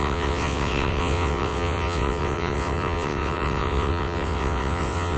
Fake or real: fake